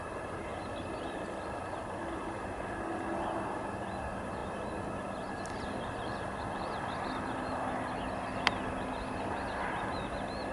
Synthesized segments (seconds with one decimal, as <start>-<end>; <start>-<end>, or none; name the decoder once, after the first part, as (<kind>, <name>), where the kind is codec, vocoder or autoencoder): 0.5-2.0 (vocoder, BigVGAN v2); 4.4-8.0